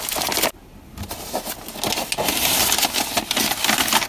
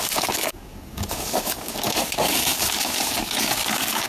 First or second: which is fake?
second